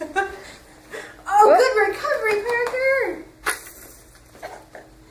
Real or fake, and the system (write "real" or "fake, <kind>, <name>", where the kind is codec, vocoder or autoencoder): real